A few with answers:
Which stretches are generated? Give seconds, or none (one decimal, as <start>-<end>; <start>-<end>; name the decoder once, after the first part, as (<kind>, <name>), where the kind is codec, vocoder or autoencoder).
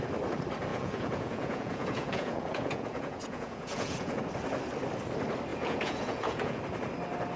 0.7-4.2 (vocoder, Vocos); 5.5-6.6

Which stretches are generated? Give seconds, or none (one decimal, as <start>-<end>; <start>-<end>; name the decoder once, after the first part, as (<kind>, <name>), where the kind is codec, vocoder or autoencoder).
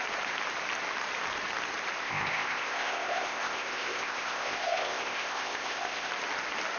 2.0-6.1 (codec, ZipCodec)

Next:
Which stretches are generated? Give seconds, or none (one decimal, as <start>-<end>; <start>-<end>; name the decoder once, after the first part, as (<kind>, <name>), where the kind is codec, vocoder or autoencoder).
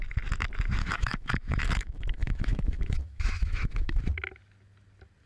0.8-4.0 (autoencoder, DAC-VAE)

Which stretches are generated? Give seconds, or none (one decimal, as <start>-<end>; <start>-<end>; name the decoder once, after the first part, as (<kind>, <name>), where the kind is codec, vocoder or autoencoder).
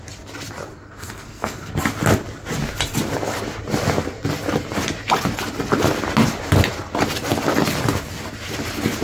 0.7-1.7 (codec, SNAC)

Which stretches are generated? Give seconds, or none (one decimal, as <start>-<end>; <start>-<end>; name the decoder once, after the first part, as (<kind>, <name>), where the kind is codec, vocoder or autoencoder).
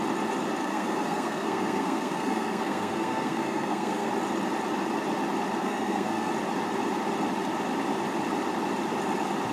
0.6-4.1 (codec, SNAC); 5.6-6.3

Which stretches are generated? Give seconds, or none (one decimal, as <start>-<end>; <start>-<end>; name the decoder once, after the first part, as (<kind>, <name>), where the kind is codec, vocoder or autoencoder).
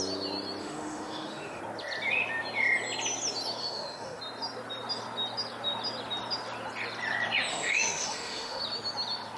0.6-1.6 (autoencoder, DAC-VAE); 3.6-4.2; 7.5-8.6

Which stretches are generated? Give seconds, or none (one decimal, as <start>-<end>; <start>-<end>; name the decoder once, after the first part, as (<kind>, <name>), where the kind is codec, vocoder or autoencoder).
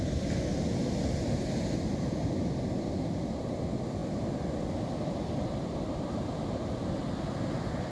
none